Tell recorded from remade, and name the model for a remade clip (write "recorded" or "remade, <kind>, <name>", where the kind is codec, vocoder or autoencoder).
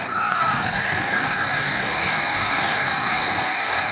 remade, codec, DAC